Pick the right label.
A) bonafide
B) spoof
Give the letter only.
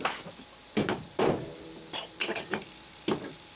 A